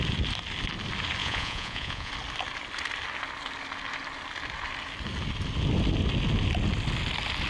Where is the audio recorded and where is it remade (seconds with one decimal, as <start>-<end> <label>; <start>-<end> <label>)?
0.0-1.2 recorded; 1.2-2.1 remade; 2.1-7.5 recorded